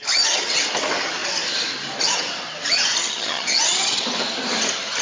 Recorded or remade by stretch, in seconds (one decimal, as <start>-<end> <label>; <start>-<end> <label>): 0.0-3.0 recorded; 3.0-3.6 remade; 3.6-5.0 recorded